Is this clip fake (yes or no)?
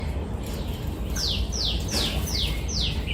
no